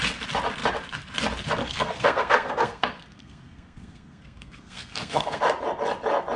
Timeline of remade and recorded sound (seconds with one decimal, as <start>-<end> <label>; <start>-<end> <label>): 0.0-1.6 recorded; 1.6-5.4 remade; 5.4-6.4 recorded